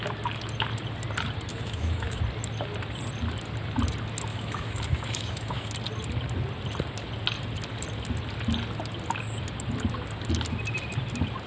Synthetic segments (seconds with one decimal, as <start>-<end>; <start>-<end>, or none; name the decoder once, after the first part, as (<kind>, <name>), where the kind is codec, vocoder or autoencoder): 1.5-2.2 (autoencoder, DAC-VAE); 4.3-5.7